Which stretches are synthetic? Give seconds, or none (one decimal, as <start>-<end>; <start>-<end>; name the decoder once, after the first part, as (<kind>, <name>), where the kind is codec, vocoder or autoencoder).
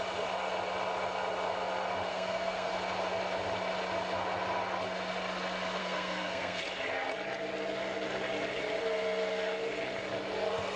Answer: 2.1-2.7 (codec, SNAC); 5.8-6.6